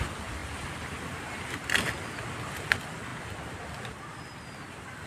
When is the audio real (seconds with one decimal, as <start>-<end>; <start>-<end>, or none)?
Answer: 0.0-5.1